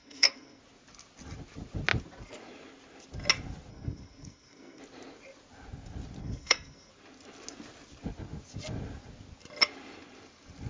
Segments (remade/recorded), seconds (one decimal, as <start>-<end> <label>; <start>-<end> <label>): 0.0-0.6 remade; 0.6-3.7 recorded; 3.7-4.8 remade; 4.8-6.2 recorded; 6.2-6.9 remade; 6.9-10.7 recorded